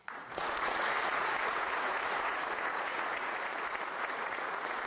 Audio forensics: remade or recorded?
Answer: remade